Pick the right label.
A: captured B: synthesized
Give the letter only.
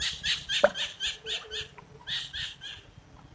A